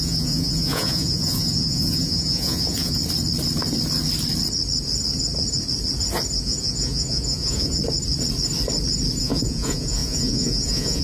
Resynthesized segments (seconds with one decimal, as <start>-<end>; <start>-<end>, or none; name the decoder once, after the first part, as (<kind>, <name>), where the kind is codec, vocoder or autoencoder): 0.0-3.0 (vocoder, Vocos); 6.4-7.8; 9.2-11.0